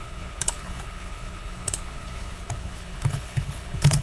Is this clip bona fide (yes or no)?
no